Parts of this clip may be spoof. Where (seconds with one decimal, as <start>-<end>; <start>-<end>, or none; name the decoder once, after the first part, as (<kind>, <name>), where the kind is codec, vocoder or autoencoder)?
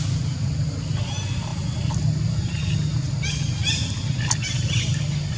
none